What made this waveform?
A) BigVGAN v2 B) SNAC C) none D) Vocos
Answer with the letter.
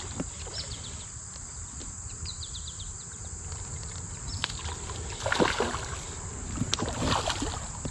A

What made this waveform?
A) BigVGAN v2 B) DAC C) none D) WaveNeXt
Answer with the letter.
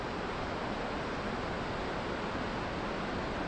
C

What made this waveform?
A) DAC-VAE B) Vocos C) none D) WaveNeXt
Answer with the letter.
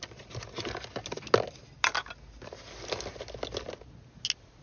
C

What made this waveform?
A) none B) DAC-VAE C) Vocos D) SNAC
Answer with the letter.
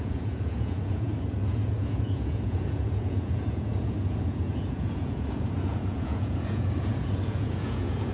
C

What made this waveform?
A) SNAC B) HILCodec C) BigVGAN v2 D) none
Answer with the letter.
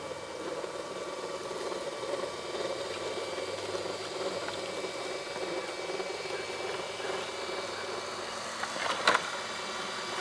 D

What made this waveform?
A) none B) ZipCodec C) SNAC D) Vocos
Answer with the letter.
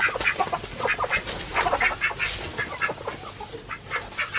A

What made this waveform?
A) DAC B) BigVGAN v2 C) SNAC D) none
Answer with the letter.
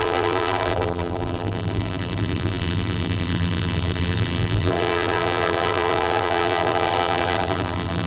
B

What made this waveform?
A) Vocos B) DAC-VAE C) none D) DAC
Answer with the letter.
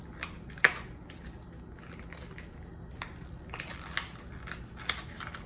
C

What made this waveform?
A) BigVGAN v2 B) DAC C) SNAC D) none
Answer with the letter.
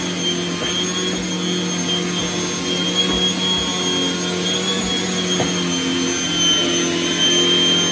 D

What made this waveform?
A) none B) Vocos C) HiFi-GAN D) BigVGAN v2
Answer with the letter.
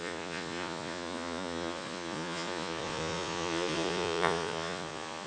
B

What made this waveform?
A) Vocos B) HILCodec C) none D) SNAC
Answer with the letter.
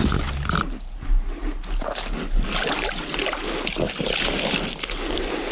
C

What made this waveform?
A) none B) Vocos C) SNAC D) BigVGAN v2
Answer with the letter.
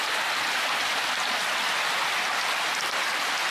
A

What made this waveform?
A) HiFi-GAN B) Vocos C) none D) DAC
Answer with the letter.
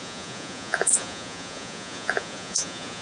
B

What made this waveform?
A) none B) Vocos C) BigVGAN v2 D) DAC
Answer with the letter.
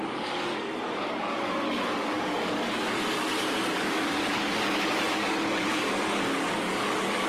D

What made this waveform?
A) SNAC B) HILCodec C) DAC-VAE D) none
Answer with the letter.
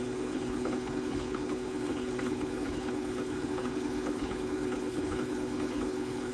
B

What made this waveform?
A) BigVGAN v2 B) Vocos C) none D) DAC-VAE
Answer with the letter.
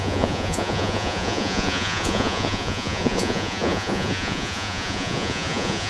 B